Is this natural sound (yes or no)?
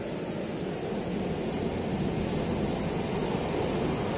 yes